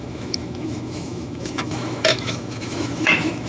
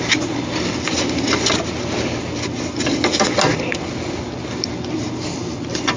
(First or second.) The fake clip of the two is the first